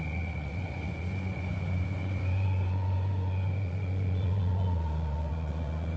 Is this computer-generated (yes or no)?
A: yes